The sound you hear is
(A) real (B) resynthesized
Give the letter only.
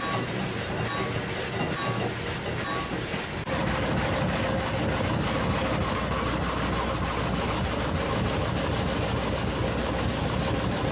A